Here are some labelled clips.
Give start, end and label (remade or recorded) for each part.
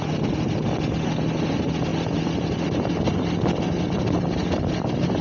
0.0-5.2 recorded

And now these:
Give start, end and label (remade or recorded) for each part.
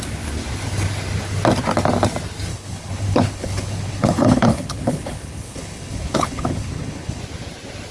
0.0-2.5 recorded; 2.5-7.2 remade; 7.2-7.9 recorded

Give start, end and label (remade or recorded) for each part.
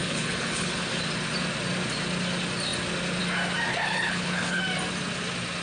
0.0-0.9 remade; 0.9-3.7 recorded; 3.7-4.6 remade; 4.6-5.6 recorded